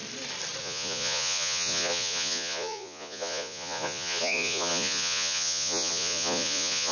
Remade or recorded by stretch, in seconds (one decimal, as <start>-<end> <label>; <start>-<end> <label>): 0.0-0.6 recorded; 0.6-6.9 remade